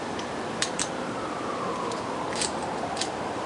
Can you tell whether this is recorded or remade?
remade